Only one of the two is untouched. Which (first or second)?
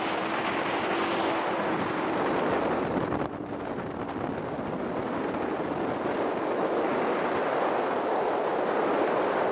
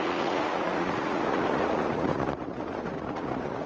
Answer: first